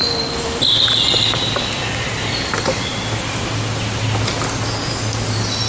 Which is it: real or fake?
real